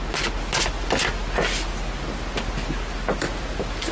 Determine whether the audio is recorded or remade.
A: recorded